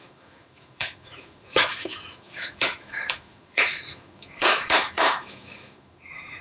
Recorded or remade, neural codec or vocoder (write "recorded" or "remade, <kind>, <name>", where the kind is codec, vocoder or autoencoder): remade, autoencoder, DAC-VAE